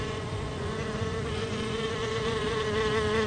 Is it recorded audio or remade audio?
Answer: remade